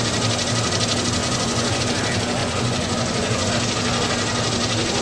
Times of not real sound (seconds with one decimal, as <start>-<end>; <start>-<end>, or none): 1.2-1.8; 2.4-3.5